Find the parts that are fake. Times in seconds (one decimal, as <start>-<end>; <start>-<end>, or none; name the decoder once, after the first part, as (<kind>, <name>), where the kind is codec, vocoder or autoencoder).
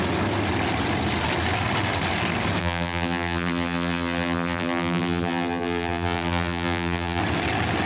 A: 2.6-7.2 (vocoder, BigVGAN v2)